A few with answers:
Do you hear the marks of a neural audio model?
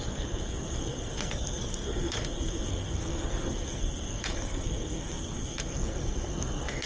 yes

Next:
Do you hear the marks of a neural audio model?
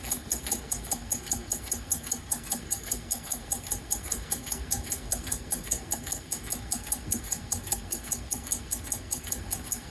yes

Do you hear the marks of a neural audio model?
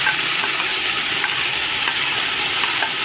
no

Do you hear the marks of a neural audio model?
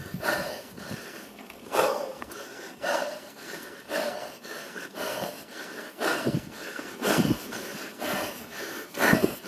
yes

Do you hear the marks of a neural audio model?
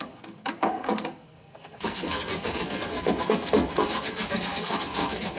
yes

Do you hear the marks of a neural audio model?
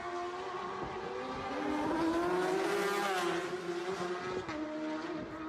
no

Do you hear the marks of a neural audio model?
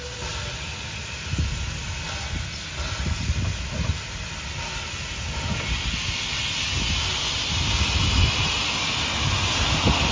no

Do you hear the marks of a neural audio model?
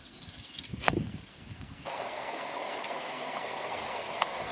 yes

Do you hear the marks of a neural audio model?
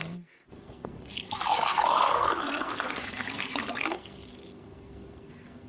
yes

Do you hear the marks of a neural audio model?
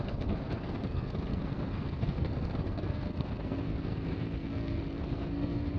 yes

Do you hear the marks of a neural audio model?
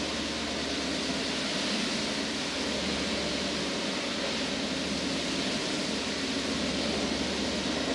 no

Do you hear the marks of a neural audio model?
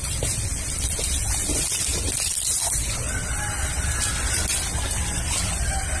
no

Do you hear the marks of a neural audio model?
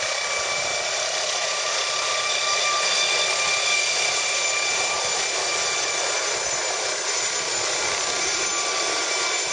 no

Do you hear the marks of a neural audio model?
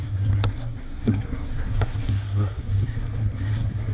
yes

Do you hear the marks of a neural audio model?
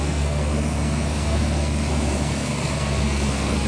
yes